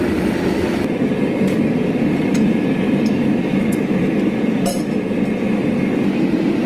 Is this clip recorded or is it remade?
remade